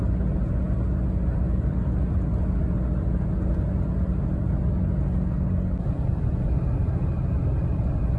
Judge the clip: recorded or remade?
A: recorded